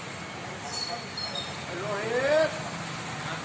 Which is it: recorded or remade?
recorded